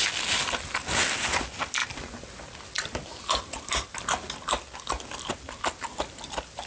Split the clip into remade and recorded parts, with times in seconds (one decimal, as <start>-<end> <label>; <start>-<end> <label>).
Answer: 0.0-6.7 recorded